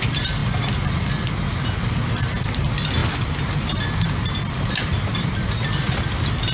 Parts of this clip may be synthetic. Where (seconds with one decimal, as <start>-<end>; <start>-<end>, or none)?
0.0-3.0; 4.5-6.5